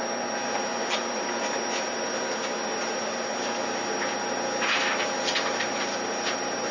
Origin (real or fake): real